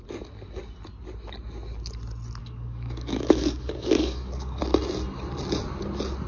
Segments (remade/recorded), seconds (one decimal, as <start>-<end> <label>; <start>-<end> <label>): 0.0-2.4 recorded; 2.4-4.6 remade; 4.6-6.3 recorded